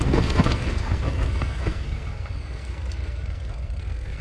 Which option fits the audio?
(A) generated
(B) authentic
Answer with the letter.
A